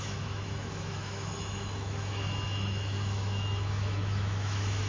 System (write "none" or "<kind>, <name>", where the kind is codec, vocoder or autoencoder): autoencoder, DAC-VAE